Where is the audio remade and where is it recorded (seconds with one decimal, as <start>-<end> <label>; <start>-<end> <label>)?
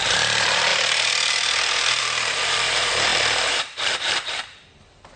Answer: 0.0-5.2 remade